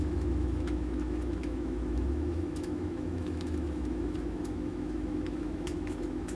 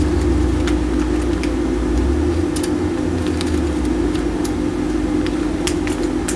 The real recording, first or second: second